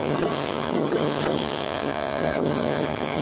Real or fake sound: fake